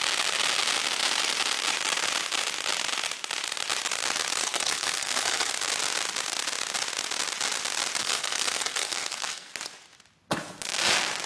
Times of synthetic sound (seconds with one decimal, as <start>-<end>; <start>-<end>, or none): 4.4-5.5; 8.0-9.5